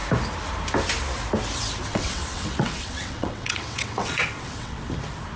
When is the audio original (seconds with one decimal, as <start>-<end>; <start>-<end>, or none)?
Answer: 0.0-1.9; 4.9-5.4